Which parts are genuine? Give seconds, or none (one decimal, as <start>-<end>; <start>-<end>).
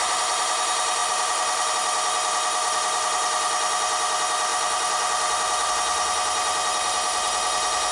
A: 0.0-1.0; 1.7-2.6; 3.2-4.5; 5.7-7.9